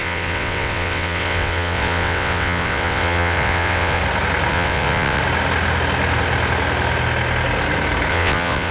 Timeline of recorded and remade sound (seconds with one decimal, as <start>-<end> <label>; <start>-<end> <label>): 0.0-4.0 remade; 4.0-4.5 recorded; 4.5-5.2 remade; 5.2-8.1 recorded; 8.1-8.7 remade